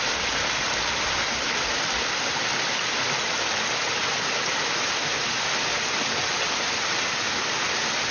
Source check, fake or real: real